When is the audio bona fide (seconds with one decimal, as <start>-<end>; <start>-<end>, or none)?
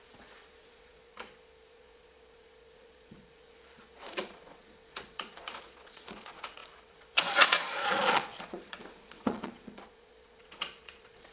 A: none